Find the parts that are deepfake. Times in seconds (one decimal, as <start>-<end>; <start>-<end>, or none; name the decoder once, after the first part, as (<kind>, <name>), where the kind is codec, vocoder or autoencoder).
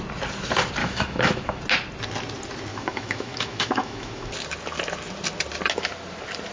0.8-1.6 (autoencoder, DAC-VAE); 2.7-4.3